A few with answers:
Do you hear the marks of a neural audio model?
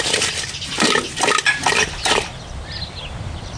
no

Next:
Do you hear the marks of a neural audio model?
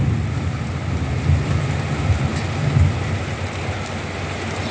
no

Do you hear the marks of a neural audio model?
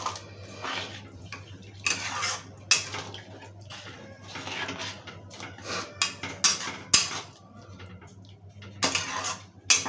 no